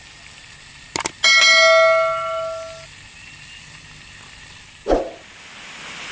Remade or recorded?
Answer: recorded